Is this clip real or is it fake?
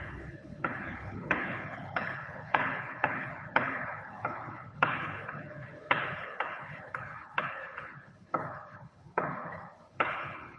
fake